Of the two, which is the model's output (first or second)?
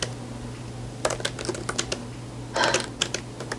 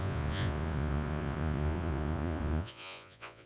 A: second